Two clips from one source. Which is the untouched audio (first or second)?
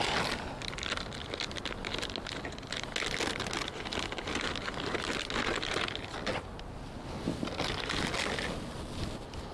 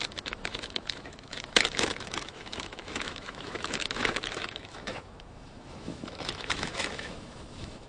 first